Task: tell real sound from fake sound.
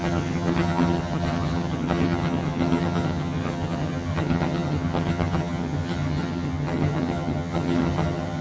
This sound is fake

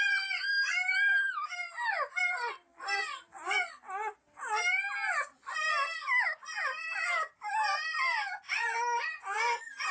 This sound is real